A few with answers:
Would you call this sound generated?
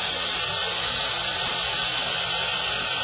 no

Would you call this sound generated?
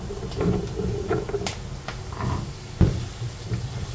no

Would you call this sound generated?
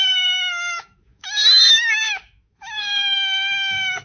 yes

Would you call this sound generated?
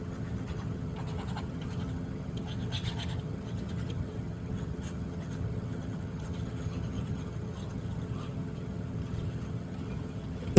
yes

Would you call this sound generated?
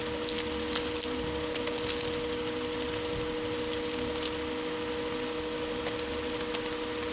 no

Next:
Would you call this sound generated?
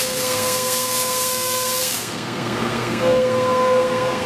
yes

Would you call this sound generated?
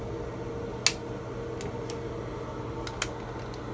no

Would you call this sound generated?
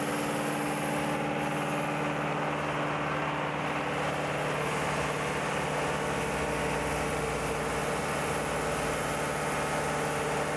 no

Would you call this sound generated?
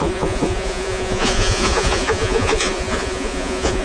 yes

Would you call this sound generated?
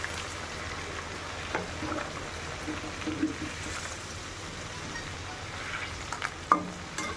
no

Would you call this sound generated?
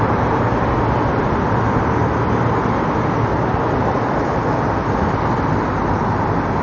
no